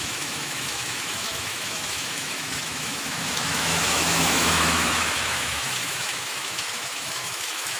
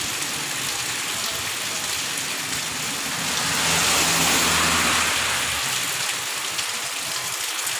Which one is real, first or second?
second